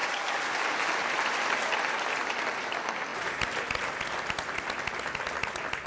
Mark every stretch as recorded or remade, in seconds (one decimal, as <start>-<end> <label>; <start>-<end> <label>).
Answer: 0.0-5.9 recorded